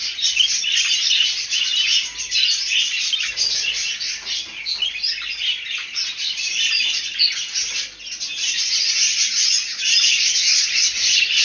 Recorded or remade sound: recorded